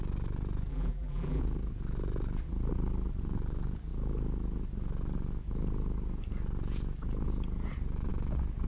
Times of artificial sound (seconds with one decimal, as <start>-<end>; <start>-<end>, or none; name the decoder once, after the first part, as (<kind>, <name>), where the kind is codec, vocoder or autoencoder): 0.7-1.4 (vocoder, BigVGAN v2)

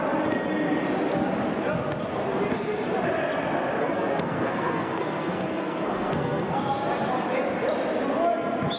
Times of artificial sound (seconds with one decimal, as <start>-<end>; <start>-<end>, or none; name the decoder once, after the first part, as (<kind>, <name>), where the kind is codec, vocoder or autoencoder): 3.8-6.6 (codec, SNAC)

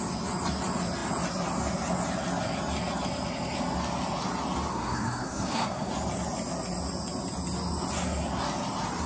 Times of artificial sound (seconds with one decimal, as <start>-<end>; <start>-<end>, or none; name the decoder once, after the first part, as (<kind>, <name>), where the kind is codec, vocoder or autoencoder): 4.7-5.9 (codec, SNAC)

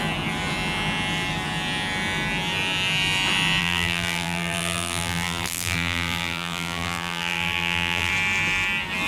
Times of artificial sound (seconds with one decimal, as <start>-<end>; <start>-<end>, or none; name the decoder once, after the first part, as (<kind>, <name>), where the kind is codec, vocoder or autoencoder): 3.6-8.1 (vocoder, BigVGAN v2)

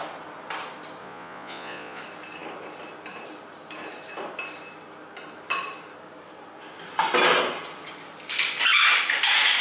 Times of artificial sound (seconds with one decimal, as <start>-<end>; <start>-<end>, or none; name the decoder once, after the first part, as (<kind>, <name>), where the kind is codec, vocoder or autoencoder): 1.0-2.0 (vocoder, Vocos)

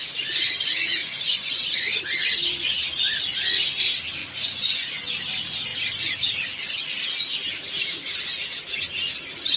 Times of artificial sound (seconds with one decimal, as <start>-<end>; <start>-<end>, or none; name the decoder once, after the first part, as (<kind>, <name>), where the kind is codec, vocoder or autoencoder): 1.0-2.0 (vocoder, Vocos); 4.2-4.9

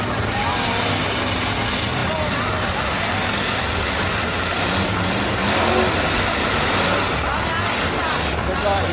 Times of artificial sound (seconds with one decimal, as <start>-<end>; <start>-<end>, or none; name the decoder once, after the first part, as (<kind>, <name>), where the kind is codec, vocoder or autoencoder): none

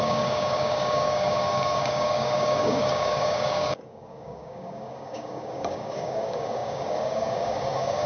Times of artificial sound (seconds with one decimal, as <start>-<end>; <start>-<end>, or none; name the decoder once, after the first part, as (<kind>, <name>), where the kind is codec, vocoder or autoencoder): 0.0-8.1 (codec, DAC)